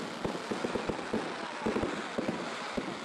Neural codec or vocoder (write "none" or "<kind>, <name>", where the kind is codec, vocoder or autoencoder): none